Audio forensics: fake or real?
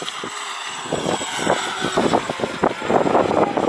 real